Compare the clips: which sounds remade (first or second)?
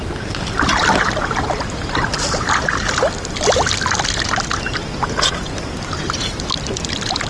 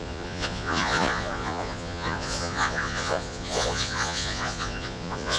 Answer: second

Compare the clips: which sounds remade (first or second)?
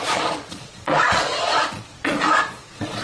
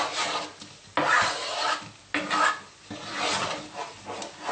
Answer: first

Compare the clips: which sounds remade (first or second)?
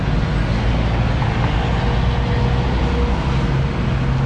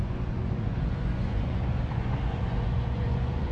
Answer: second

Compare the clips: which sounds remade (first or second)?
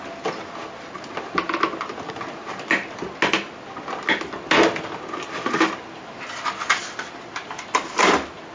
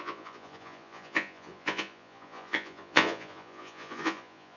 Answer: second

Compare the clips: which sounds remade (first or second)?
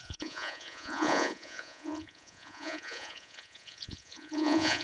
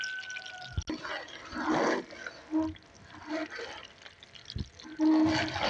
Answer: first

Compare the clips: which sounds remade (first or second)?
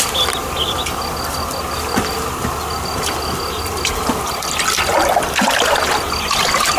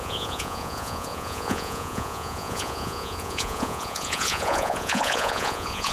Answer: second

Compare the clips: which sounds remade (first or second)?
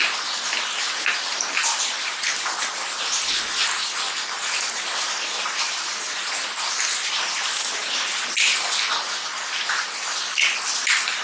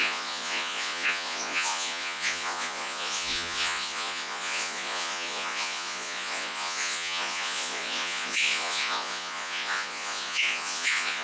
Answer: second